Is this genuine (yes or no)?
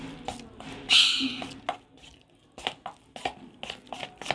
yes